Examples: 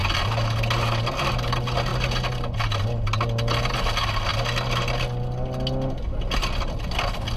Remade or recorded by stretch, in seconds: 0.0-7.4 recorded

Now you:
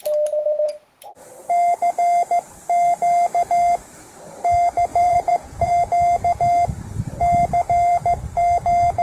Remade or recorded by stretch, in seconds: 0.0-4.9 recorded; 4.9-5.7 remade; 5.7-9.0 recorded

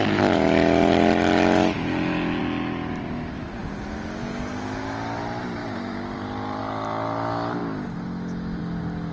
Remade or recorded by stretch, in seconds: 0.0-2.4 recorded; 2.4-3.6 remade; 3.6-5.6 recorded; 5.6-6.6 remade; 6.6-9.1 recorded

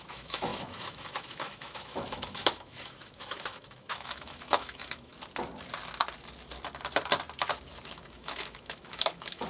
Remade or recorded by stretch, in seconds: 0.0-5.1 remade; 5.1-7.8 recorded; 7.8-9.5 remade

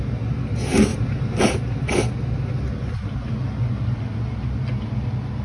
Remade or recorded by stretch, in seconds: 0.0-5.4 recorded